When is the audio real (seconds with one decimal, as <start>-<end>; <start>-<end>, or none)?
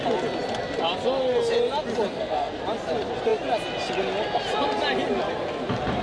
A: 0.0-2.1; 2.6-6.0